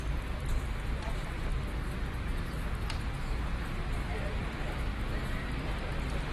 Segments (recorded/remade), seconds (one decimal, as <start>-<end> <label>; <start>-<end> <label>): 0.0-1.5 remade; 1.5-4.1 recorded; 4.1-4.9 remade; 4.9-5.7 recorded; 5.7-6.3 remade